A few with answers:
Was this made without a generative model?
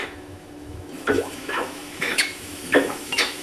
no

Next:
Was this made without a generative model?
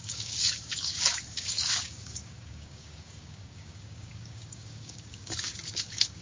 no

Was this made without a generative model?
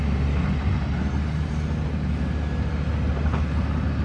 yes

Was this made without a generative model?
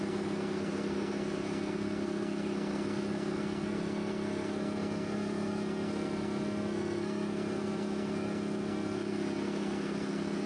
no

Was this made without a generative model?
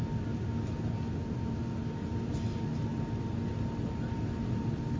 yes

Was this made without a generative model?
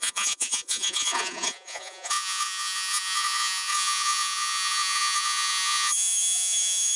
no